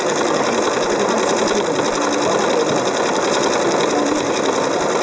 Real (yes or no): no